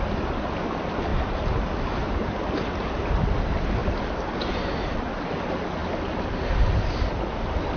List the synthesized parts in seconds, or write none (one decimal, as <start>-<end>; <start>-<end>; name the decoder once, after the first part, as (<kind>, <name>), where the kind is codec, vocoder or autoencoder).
none

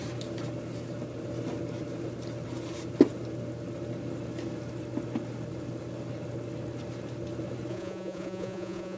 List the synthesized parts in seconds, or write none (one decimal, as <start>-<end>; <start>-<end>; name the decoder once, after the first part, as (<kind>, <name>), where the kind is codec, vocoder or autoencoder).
7.7-9.0 (vocoder, Vocos)

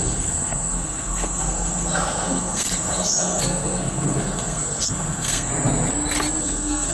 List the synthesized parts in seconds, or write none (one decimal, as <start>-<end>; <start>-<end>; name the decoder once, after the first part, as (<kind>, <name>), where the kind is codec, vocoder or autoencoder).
0.0-5.5 (codec, SNAC); 6.4-6.9

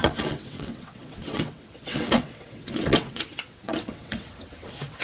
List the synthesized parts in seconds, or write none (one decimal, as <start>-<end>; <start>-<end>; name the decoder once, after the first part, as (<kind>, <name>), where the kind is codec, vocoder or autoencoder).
0.0-5.0 (vocoder, WaveNeXt)